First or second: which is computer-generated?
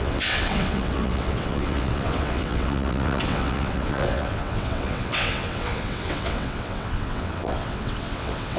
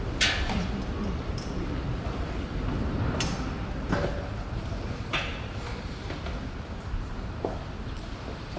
first